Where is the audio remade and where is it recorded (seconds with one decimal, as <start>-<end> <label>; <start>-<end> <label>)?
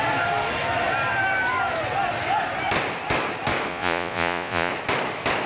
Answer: 0.0-3.7 recorded; 3.7-4.7 remade; 4.7-5.5 recorded